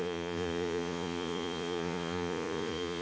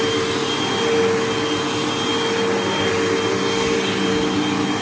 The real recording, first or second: second